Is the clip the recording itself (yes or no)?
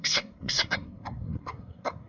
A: no